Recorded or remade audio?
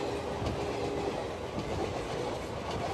recorded